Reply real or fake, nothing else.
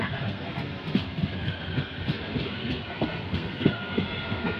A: fake